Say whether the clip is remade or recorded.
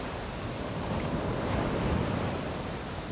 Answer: recorded